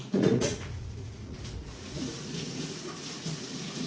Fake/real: fake